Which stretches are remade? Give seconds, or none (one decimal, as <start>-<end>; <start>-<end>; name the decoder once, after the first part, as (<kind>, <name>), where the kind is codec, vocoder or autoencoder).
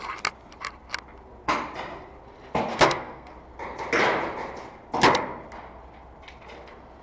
2.7-3.3 (codec, SNAC)